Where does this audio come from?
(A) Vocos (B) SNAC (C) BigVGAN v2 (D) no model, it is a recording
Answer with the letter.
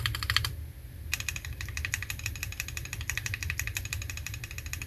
C